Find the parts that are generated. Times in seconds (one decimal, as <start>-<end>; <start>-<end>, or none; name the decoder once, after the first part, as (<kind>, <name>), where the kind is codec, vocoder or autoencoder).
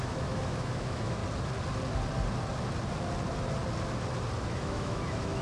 0.0-1.2 (autoencoder, DAC-VAE); 4.4-5.4